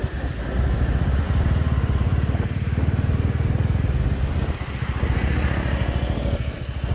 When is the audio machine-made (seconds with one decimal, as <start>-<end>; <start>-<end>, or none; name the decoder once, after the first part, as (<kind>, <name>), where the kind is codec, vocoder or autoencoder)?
none